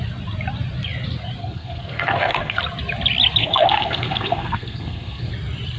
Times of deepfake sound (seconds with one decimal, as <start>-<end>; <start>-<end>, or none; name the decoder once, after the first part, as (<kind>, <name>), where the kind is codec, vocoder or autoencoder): 1.4-2.6 (codec, SNAC); 3.4-5.3